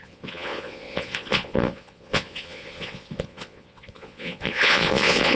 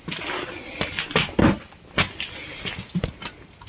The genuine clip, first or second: second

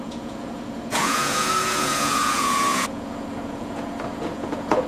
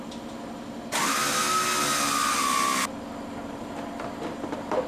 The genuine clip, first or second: second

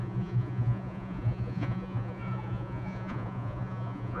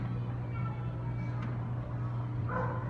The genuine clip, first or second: second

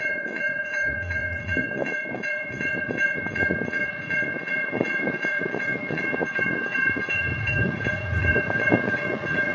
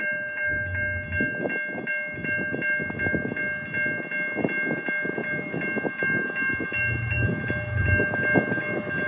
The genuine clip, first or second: second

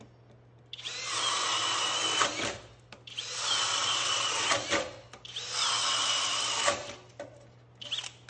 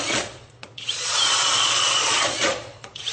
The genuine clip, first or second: first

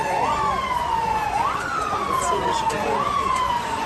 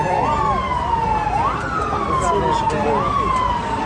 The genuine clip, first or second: second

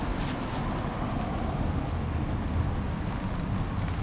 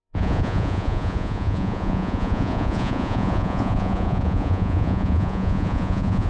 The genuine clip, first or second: first